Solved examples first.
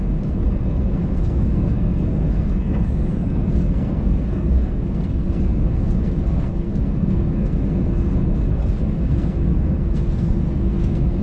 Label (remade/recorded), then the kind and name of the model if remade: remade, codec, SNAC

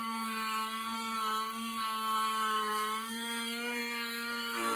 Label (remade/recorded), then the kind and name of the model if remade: remade, codec, SNAC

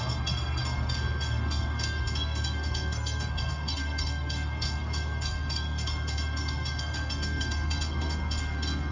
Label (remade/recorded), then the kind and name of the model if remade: remade, codec, SNAC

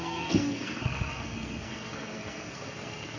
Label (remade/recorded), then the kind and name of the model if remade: remade, codec, SNAC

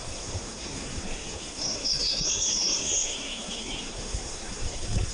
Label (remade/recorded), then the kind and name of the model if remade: remade, codec, SNAC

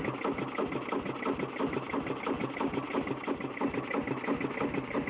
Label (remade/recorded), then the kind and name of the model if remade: recorded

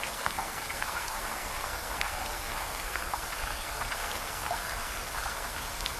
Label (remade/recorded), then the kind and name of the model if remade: remade, codec, SNAC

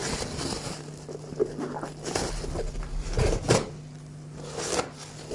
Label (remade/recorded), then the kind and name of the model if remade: recorded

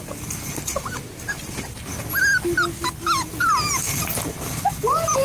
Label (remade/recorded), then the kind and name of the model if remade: recorded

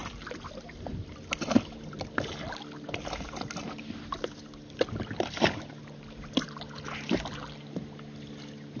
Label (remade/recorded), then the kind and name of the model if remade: recorded